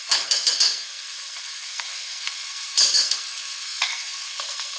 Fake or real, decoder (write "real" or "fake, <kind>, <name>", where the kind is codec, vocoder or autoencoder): fake, codec, SNAC